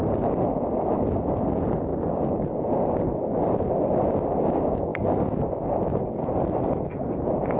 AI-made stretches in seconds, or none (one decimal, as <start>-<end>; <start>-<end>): none